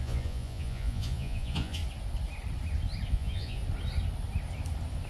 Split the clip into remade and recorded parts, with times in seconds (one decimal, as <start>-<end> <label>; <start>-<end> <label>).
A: 0.0-1.8 remade; 1.8-3.1 recorded; 3.1-3.6 remade; 3.6-5.1 recorded